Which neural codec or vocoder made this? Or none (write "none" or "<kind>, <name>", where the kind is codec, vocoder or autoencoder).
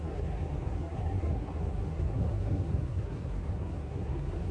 codec, SNAC